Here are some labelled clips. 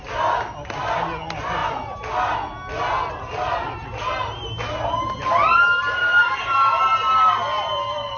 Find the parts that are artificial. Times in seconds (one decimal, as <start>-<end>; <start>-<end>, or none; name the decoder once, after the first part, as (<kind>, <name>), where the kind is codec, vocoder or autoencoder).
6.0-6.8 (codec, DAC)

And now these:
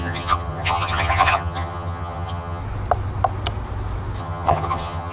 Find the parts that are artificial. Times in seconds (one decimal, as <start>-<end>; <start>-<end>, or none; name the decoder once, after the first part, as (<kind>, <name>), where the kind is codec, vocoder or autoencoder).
0.0-2.6 (vocoder, HiFi-GAN); 4.2-5.1

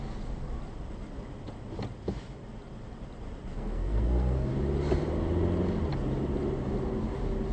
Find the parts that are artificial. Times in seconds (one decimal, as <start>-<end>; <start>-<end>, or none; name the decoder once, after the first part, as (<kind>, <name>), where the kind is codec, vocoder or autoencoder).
3.5-4.5 (codec, SNAC)

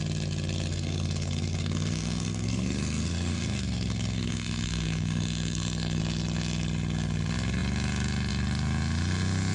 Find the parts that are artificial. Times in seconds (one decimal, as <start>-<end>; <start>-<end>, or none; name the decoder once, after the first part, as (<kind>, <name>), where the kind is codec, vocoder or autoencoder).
0.7-6.0 (codec, SNAC)